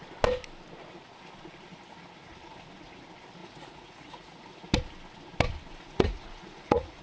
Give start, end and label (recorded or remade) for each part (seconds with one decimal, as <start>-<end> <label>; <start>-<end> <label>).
0.0-3.4 recorded; 3.4-4.7 remade; 4.7-5.7 recorded; 5.7-7.0 remade